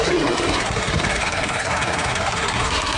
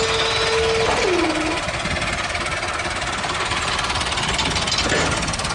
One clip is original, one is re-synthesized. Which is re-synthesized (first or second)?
first